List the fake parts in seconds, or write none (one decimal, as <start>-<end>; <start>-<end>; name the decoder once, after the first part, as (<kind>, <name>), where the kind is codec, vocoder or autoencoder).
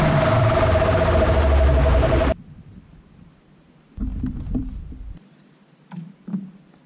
0.0-6.0 (vocoder, BigVGAN v2); 6.5-6.9